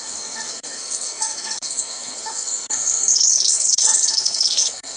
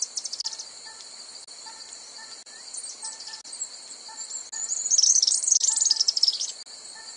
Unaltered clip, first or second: second